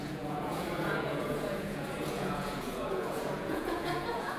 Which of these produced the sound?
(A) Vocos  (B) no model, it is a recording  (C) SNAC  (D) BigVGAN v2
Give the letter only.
A